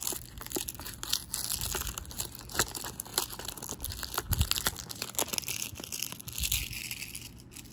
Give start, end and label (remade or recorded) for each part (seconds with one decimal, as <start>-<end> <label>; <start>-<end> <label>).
0.0-7.7 recorded